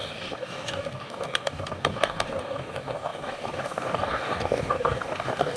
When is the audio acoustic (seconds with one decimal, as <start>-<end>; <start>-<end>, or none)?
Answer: none